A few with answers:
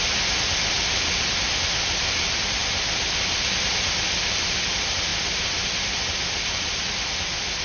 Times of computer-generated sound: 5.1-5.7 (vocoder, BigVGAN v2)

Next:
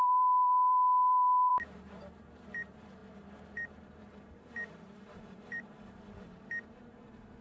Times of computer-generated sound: 0.0-7.4 (vocoder, BigVGAN v2)